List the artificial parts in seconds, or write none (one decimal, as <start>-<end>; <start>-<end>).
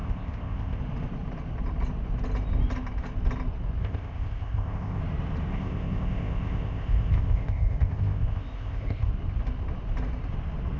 0.0-0.8; 3.8-5.0; 5.5-9.1